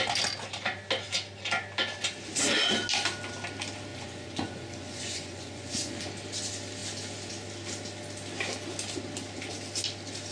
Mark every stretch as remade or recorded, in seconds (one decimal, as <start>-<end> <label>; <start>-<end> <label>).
0.0-3.9 recorded; 3.9-6.1 remade; 6.1-10.3 recorded